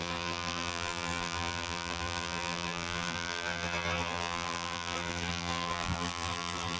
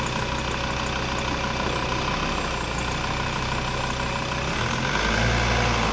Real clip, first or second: second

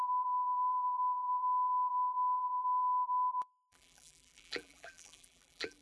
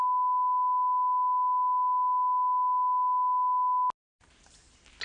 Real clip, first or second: second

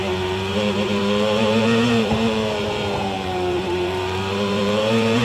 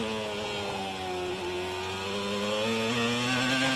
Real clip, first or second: second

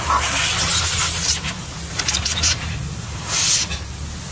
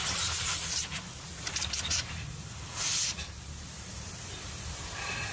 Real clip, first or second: first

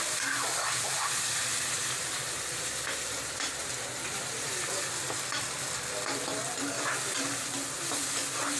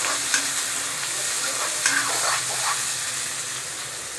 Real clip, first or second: second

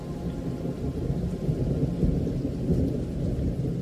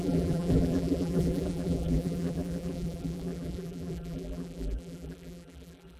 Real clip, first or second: first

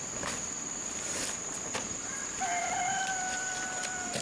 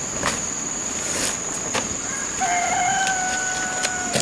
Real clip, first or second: second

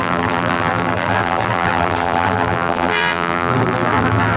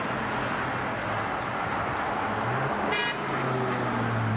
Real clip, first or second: second